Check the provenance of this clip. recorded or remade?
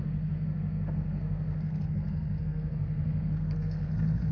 remade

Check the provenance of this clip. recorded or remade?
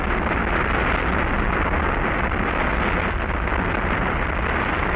recorded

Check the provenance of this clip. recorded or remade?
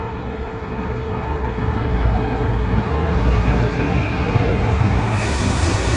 remade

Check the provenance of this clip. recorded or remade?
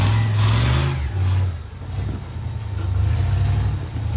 recorded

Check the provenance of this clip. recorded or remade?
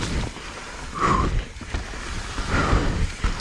recorded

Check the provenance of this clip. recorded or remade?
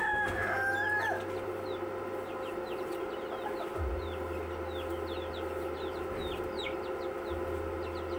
recorded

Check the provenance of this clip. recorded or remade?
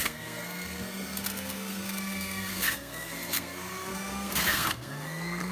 remade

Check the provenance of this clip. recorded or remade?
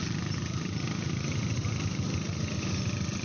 recorded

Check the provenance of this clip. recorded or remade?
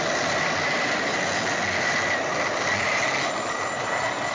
recorded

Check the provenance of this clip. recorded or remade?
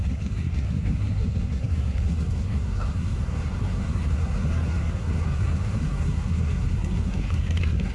remade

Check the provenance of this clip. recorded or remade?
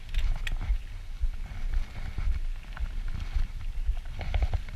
recorded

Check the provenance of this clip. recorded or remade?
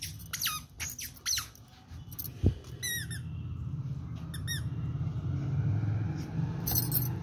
recorded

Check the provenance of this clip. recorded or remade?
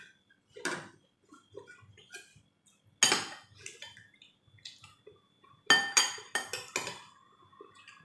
recorded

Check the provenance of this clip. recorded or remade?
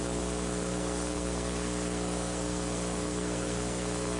remade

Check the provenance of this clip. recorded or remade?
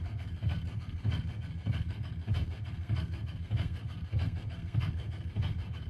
remade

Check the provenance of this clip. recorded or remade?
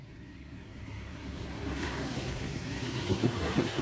remade